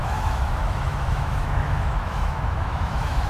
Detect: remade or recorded remade